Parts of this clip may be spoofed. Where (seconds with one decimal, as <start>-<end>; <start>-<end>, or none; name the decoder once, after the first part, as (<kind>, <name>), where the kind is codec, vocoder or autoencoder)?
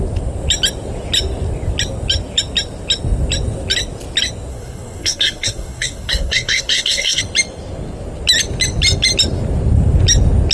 4.5-7.2 (codec, SNAC)